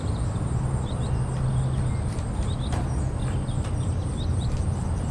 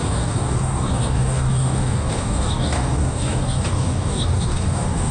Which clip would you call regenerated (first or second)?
second